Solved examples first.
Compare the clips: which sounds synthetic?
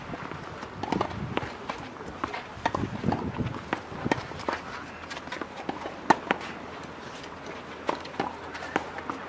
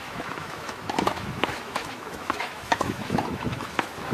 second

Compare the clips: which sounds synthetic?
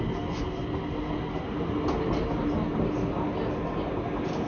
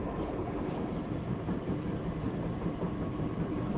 second